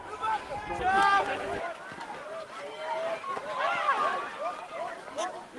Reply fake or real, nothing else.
real